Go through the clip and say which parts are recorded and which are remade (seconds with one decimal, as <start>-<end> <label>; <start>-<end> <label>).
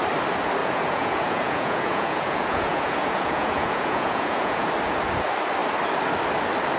0.0-0.6 recorded; 0.6-4.7 remade; 4.7-6.8 recorded